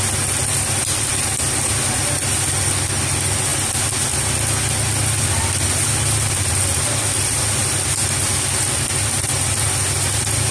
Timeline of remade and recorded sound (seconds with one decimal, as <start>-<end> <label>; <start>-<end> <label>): 0.0-10.5 recorded